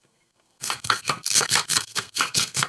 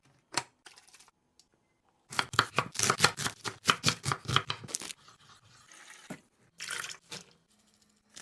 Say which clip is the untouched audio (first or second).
second